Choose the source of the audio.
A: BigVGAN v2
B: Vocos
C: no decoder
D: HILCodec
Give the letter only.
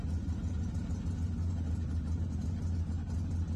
C